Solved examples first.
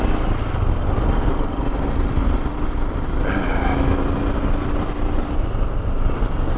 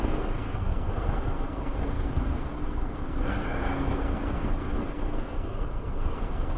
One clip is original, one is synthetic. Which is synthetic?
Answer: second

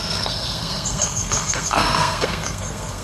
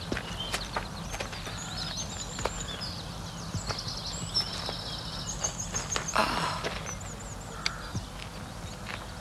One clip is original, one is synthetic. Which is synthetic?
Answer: first